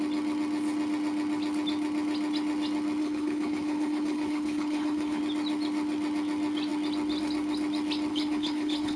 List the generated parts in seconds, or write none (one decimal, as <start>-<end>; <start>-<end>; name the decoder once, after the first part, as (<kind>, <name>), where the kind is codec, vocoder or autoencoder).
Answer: 3.0-5.2 (codec, HILCodec); 8.1-9.0